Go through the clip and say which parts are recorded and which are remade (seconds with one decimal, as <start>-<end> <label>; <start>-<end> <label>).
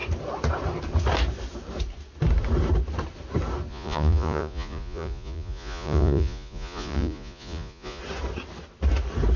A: 0.0-3.7 recorded; 3.7-8.0 remade; 8.0-9.4 recorded